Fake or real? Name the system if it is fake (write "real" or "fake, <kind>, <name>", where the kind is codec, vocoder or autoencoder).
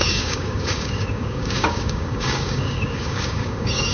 fake, codec, DAC